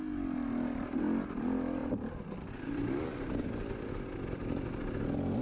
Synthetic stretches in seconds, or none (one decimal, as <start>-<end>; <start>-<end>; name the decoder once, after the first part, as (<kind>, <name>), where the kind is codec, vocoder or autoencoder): none